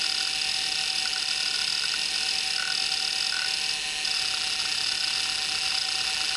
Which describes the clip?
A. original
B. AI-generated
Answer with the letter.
A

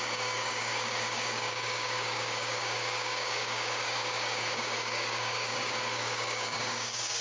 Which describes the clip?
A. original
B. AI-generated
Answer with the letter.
B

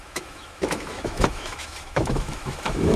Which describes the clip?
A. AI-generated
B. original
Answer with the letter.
A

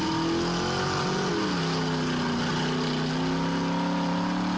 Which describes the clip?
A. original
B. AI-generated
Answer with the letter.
A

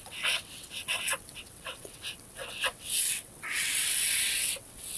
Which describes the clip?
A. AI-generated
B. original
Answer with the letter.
A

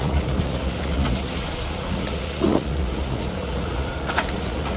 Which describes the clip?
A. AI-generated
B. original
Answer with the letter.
A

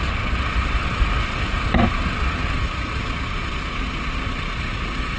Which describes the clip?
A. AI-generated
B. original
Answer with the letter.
B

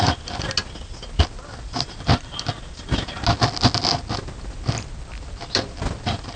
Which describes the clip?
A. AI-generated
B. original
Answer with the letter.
B